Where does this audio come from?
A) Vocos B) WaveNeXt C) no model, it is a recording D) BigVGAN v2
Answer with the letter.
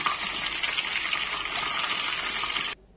C